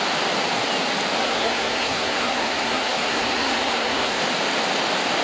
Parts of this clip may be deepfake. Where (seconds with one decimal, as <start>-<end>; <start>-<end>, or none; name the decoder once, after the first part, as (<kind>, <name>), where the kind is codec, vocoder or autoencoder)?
1.2-4.2 (codec, SNAC)